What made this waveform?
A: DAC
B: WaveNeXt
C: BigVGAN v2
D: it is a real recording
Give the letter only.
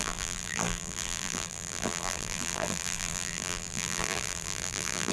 C